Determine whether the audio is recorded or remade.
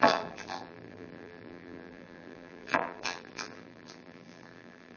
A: remade